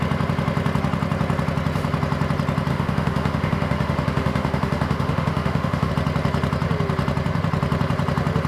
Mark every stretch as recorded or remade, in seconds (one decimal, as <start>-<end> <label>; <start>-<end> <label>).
0.0-2.7 recorded; 2.7-5.9 remade; 5.9-8.5 recorded